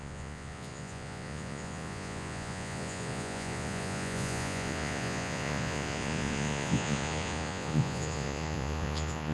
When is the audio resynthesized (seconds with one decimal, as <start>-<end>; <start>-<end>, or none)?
0.0-9.3